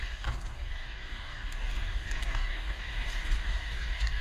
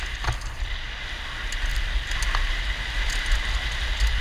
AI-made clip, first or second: first